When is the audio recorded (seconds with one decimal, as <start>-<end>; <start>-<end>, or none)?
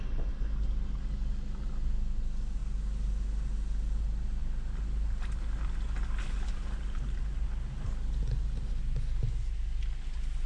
0.0-10.5